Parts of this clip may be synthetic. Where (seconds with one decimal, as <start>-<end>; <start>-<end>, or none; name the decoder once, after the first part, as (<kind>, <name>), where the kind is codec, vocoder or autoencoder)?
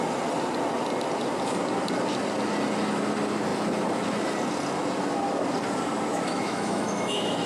6.1-7.5 (autoencoder, DAC-VAE)